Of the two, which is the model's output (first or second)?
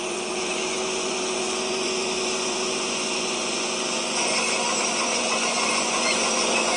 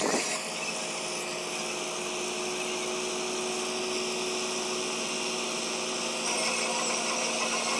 first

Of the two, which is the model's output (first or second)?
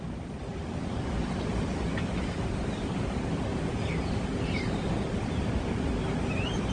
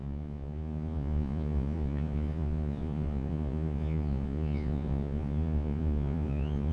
second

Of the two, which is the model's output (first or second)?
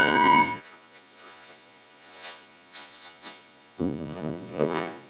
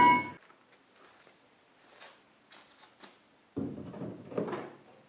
first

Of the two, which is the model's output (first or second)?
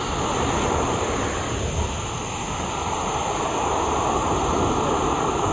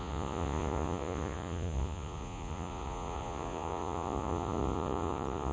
second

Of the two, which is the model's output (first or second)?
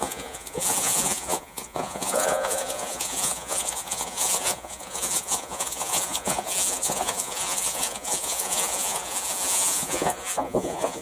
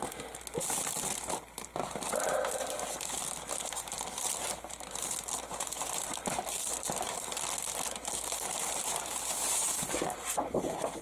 first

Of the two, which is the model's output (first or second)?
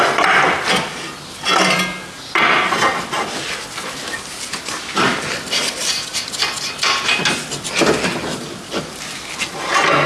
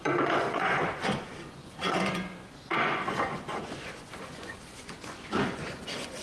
second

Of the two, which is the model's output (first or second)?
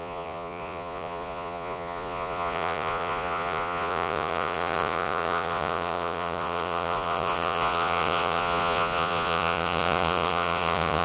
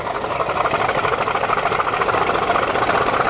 first